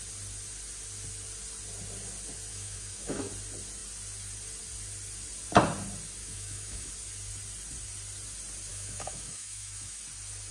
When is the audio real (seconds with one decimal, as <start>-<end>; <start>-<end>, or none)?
0.0-2.5; 3.3-6.2; 6.9-8.7; 10.0-10.5